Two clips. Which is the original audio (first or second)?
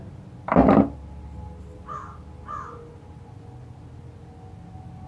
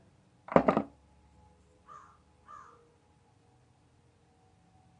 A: first